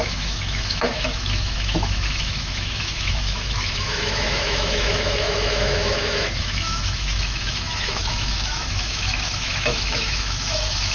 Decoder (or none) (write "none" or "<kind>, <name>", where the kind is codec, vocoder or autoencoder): autoencoder, DAC-VAE